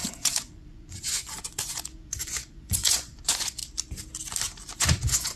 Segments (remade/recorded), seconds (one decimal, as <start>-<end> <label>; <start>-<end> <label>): 0.0-3.6 remade; 3.6-4.8 recorded; 4.8-5.4 remade